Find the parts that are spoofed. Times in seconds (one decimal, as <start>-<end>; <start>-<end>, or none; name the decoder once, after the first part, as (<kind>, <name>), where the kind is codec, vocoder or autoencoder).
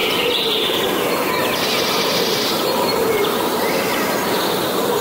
1.4-4.4 (vocoder, BigVGAN v2)